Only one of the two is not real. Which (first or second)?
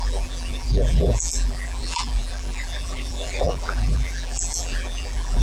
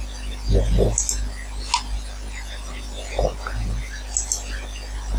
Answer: first